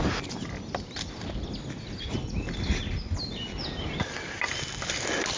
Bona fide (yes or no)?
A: yes